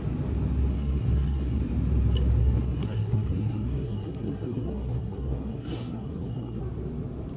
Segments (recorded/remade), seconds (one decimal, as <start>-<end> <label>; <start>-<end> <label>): 0.0-0.7 recorded; 0.7-1.6 remade; 1.6-2.4 recorded; 2.4-6.6 remade; 6.6-7.4 recorded